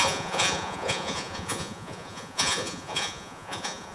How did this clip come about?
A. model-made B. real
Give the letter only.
A